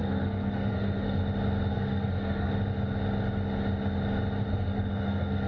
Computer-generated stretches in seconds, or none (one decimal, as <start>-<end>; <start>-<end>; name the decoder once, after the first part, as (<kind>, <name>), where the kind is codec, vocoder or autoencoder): 0.0-1.2 (codec, SNAC); 1.7-2.5; 4.5-5.5

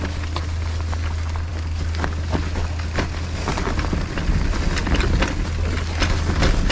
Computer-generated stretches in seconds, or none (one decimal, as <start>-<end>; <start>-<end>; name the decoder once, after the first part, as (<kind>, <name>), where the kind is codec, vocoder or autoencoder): none

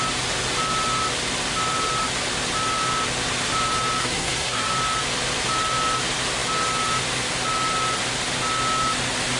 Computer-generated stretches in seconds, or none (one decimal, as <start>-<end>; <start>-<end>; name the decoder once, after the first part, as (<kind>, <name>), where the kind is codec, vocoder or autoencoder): 4.0-4.7 (codec, SNAC)

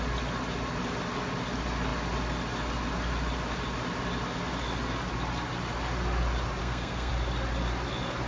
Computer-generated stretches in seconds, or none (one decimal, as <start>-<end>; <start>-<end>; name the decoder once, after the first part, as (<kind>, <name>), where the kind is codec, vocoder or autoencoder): 6.6-7.1 (codec, SNAC)

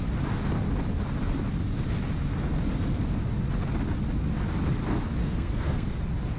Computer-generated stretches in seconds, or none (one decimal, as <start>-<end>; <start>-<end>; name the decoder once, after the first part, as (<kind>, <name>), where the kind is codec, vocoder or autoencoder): 5.2-5.9 (codec, SNAC)

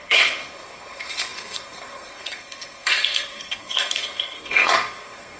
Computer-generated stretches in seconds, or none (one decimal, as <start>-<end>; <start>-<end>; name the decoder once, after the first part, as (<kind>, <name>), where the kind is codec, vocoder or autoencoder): 0.0-5.4 (codec, SNAC)